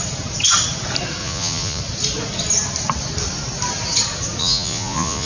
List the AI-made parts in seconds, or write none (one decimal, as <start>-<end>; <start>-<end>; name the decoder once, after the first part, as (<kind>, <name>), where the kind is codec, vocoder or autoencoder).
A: 1.2-1.8 (vocoder, Vocos); 4.4-5.3